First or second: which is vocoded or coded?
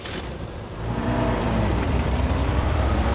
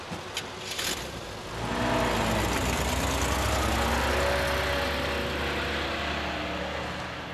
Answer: first